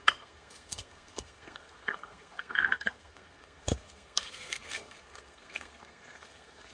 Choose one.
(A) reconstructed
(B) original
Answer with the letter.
A